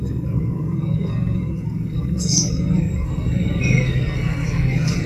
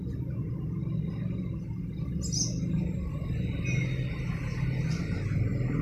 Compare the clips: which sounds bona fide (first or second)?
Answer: second